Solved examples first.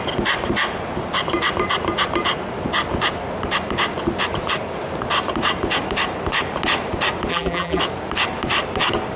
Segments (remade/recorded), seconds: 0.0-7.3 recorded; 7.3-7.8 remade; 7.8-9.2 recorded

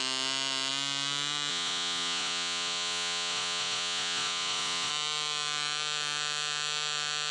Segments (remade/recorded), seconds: 0.0-1.5 recorded; 1.5-4.9 remade; 4.9-7.3 recorded

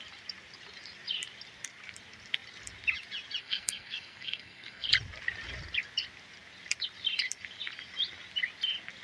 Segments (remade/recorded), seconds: 0.0-3.4 recorded; 3.4-4.9 remade; 4.9-9.0 recorded

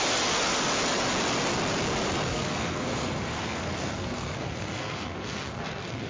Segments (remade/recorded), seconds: 0.0-2.3 recorded; 2.3-6.1 remade

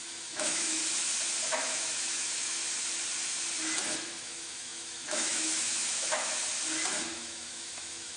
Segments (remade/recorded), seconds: 0.0-0.8 remade; 0.8-1.4 recorded; 1.4-2.6 remade; 2.6-4.0 recorded; 4.0-6.4 remade; 6.4-7.1 recorded; 7.1-8.2 remade

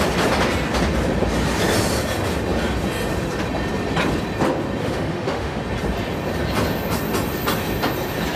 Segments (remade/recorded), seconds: 0.0-4.8 recorded; 4.8-5.6 remade; 5.6-8.4 recorded